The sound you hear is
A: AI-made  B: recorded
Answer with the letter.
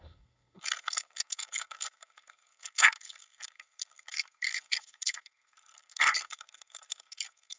A